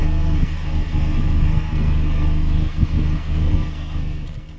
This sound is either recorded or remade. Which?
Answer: remade